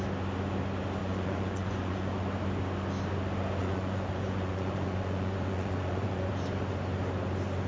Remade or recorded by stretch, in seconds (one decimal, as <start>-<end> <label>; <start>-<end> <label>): 0.0-1.0 recorded; 1.0-2.2 remade; 2.2-3.6 recorded; 3.6-6.3 remade; 6.3-7.7 recorded